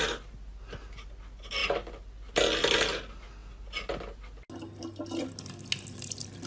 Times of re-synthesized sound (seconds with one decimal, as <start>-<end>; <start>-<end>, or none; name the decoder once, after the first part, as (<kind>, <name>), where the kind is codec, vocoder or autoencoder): none